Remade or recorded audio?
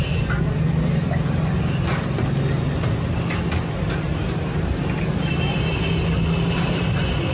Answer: recorded